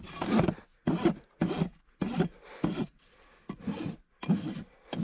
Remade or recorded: recorded